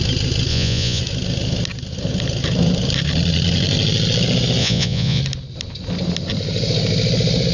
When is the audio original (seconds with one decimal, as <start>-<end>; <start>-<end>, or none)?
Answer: 0.0-0.5; 1.0-4.6; 5.2-7.5